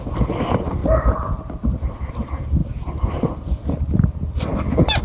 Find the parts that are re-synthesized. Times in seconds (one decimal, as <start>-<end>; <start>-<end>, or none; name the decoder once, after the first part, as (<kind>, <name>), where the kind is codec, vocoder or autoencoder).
none